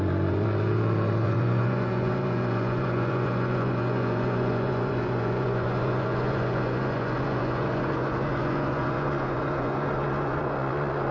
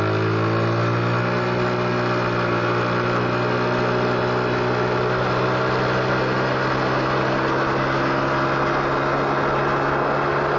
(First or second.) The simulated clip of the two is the first